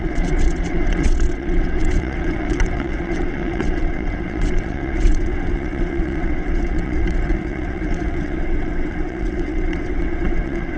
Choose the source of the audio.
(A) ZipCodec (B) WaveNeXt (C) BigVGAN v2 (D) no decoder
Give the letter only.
B